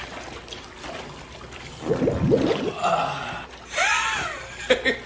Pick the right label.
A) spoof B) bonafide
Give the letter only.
B